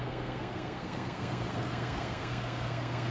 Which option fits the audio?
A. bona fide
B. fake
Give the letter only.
B